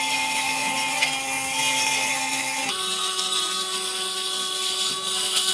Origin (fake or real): fake